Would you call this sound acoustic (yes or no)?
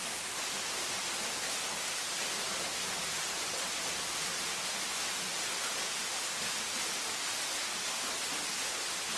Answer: yes